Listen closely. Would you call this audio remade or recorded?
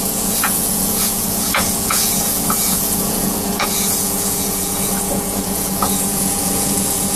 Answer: remade